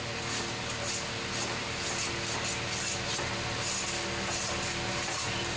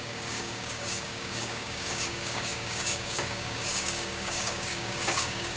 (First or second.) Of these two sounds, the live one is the first